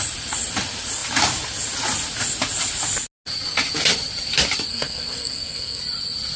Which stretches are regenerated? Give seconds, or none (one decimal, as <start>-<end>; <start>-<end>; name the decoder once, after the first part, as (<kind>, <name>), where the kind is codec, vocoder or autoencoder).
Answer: 4.7-5.8 (codec, SNAC)